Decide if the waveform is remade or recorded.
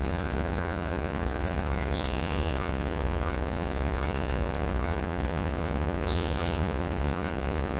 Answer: remade